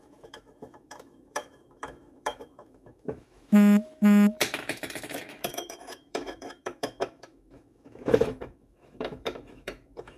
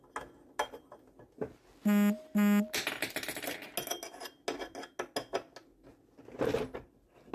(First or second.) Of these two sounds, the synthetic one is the first